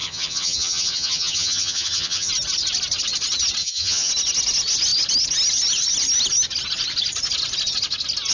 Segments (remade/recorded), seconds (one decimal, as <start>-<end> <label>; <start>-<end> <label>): 0.0-2.3 remade; 2.3-3.6 recorded; 3.6-4.1 remade; 4.1-8.3 recorded